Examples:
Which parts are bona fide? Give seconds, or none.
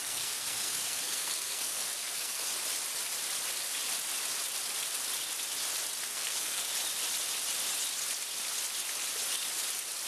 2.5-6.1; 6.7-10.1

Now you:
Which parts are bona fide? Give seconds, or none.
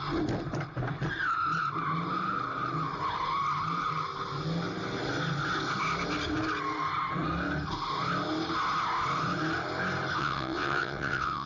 0.0-10.2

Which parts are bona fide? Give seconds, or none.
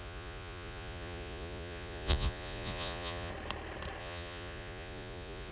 3.3-4.0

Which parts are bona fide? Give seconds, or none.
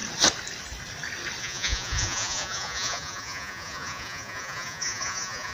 0.0-1.4